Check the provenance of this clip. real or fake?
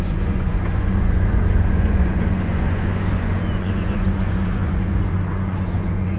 fake